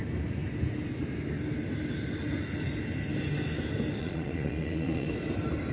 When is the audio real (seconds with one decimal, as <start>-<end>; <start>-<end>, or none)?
0.0-4.0; 5.1-5.7